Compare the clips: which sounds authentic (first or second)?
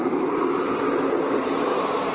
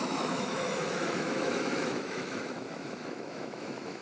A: first